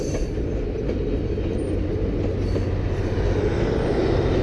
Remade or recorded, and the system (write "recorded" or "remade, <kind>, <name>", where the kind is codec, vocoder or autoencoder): recorded